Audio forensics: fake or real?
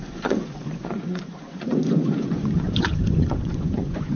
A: fake